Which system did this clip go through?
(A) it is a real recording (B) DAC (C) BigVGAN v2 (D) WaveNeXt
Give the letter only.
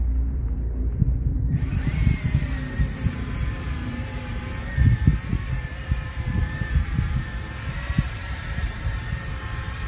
C